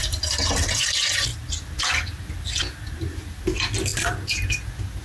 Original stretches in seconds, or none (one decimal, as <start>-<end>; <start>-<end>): 0.0-5.0

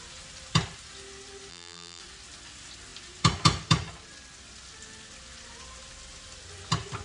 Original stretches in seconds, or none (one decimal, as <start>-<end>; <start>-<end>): 0.0-1.5; 2.0-7.0

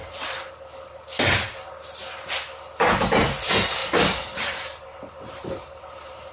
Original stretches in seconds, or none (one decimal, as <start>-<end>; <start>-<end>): 0.5-3.8